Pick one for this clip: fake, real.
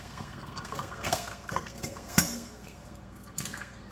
fake